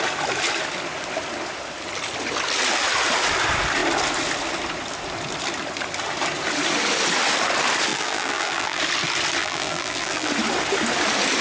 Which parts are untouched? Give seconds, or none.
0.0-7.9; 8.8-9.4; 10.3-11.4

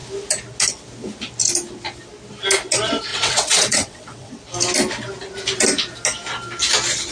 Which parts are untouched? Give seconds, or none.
0.0-3.1; 4.3-7.1

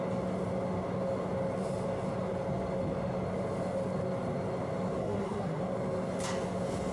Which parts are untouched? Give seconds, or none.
0.0-5.0; 5.6-6.9

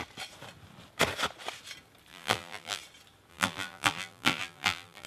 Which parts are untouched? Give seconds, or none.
0.0-2.1; 2.8-3.3

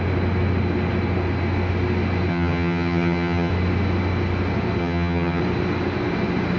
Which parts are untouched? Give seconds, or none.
0.0-2.3; 3.5-4.8; 5.4-6.6

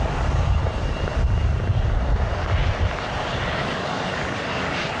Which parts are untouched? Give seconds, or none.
0.6-3.6